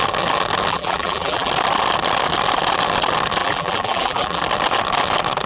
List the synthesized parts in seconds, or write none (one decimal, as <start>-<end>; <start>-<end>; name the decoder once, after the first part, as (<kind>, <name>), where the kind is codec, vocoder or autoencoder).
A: 0.7-1.5 (vocoder, BigVGAN v2); 3.4-4.4